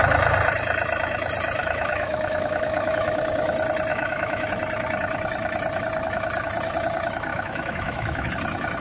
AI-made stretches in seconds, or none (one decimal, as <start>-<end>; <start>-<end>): 1.6-3.2; 3.9-4.5; 7.3-8.3